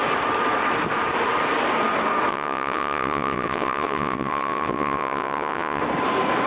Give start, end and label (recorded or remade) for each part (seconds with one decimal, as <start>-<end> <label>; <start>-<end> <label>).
0.0-2.3 recorded; 2.3-5.8 remade; 5.8-6.5 recorded